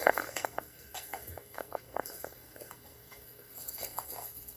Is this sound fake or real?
fake